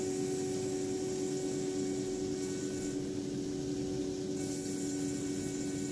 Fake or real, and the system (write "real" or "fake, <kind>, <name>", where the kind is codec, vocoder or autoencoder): real